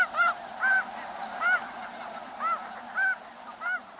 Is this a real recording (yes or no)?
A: yes